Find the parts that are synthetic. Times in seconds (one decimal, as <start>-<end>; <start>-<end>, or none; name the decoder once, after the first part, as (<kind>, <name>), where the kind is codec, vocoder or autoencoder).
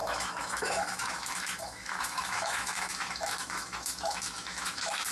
0.0-5.1 (autoencoder, DAC-VAE)